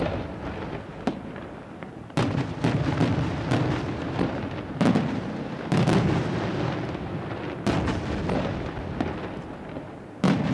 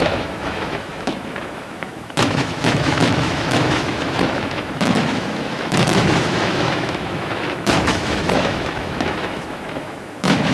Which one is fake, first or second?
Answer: second